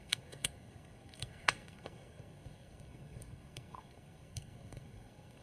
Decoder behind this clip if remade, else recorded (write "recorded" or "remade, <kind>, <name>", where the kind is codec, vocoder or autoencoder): remade, codec, SNAC